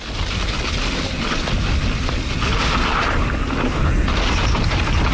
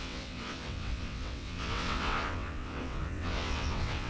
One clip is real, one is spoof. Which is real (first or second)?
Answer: first